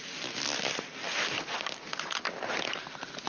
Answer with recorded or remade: recorded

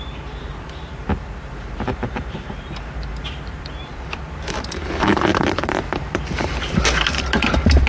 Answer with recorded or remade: remade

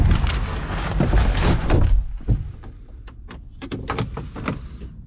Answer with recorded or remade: recorded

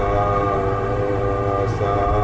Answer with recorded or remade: recorded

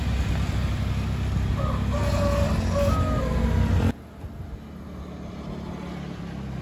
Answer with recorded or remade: recorded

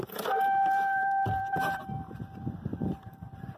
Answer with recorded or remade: remade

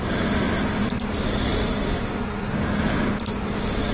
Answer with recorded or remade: recorded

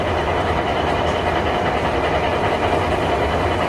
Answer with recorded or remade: recorded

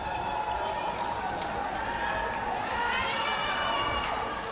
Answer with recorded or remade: recorded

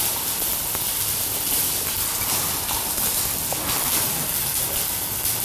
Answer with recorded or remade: recorded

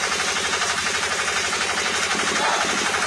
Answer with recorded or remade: remade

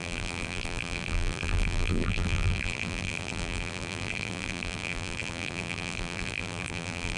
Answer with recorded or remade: remade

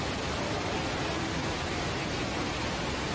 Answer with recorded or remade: recorded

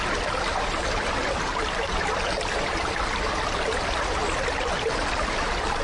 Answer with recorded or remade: recorded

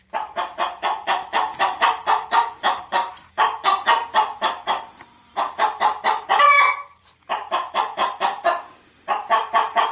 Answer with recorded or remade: remade